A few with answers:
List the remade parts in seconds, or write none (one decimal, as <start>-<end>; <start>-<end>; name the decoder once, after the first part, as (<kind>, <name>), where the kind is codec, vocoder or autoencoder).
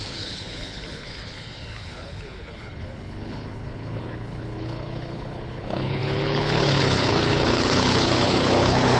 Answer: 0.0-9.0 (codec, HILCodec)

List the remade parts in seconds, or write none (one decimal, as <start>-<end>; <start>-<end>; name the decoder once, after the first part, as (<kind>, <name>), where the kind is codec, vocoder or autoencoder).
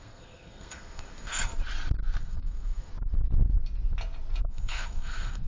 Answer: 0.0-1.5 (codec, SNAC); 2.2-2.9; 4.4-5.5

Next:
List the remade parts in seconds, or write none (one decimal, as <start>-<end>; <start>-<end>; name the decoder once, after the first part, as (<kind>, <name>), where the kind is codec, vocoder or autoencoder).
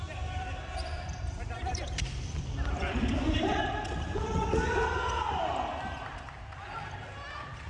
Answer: 0.0-7.7 (vocoder, BigVGAN v2)